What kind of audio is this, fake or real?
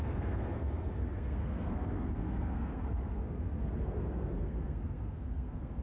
fake